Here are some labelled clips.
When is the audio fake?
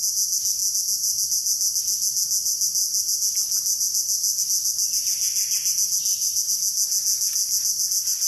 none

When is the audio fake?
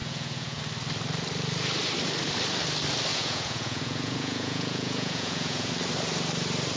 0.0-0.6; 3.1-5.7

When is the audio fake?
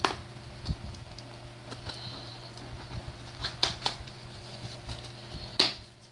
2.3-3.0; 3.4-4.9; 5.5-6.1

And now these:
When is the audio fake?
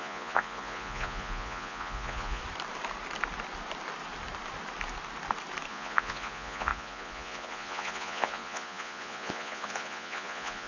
0.0-2.4; 5.7-10.7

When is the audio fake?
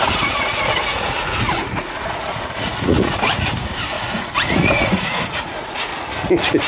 0.0-5.9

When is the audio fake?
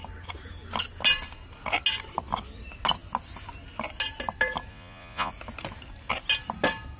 4.7-5.3